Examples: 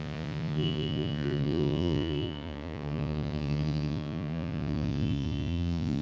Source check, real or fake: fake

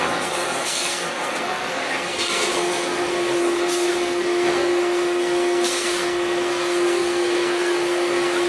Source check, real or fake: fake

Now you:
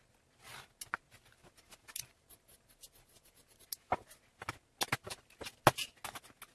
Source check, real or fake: real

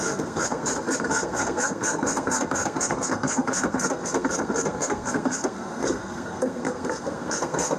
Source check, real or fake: fake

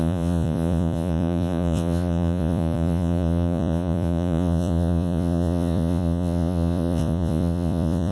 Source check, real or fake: fake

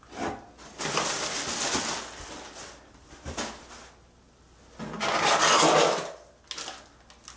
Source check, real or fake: real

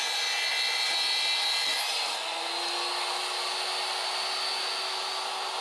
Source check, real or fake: real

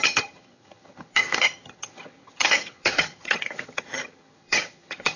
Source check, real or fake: fake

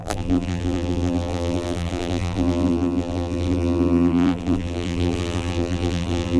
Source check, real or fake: fake